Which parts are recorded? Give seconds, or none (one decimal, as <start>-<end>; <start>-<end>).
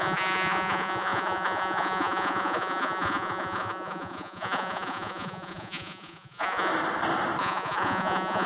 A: 6.7-7.4